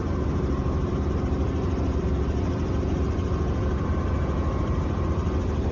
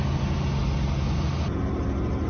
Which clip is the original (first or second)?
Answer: second